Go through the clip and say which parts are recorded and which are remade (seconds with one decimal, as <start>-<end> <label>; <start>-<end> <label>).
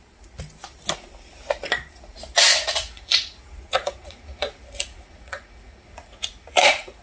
0.0-2.5 recorded; 2.5-7.0 remade